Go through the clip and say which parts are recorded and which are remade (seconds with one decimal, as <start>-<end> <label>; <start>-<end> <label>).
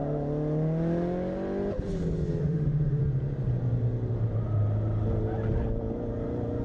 0.0-2.4 recorded; 2.4-3.0 remade; 3.0-6.6 recorded